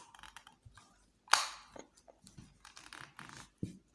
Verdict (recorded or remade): recorded